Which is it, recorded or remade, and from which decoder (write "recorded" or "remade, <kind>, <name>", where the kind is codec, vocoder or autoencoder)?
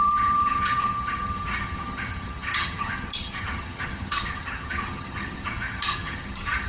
remade, vocoder, HiFi-GAN